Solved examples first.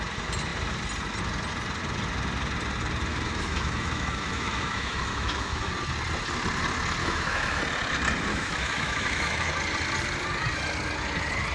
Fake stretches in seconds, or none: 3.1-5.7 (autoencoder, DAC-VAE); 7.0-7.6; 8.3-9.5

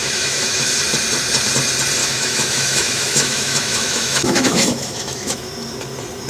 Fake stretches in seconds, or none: 0.0-0.8 (autoencoder, DAC-VAE); 2.0-5.5

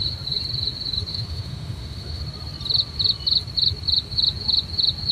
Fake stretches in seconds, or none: 1.1-2.2 (autoencoder, DAC-VAE)

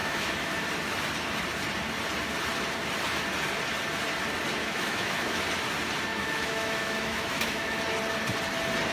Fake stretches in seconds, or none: 0.0-0.5 (autoencoder, DAC-VAE); 4.6-5.4; 6.1-7.8

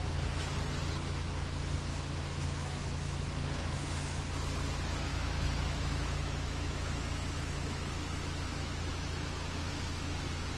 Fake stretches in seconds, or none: 1.9-4.2 (autoencoder, DAC-VAE); 5.1-10.2

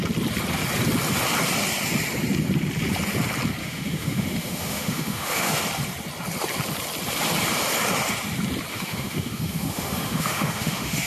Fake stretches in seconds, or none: 3.6-5.6 (autoencoder, DAC-VAE); 8.7-11.1

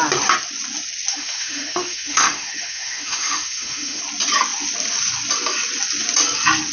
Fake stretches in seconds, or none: 1.1-4.0 (autoencoder, DAC-VAE)